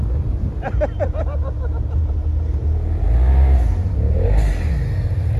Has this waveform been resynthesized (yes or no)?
no